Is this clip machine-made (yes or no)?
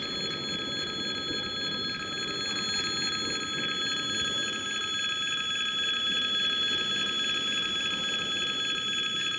no